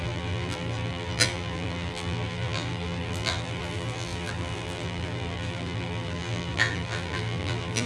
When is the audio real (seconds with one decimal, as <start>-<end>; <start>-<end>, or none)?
none